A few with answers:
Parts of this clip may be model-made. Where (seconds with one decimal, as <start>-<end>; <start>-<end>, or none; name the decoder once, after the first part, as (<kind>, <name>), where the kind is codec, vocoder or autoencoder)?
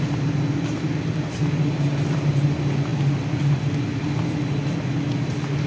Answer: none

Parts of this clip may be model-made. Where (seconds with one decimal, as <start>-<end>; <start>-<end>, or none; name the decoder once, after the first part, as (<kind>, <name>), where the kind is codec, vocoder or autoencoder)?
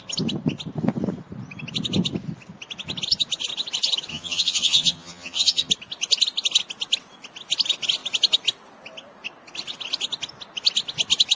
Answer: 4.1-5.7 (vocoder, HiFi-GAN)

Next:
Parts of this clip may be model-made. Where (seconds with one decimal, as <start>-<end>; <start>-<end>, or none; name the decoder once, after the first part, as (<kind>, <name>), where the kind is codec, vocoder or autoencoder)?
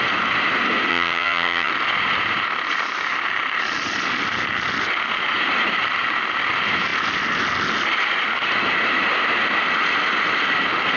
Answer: 0.9-1.7 (vocoder, HiFi-GAN)